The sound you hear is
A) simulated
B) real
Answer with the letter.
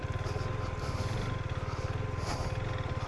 B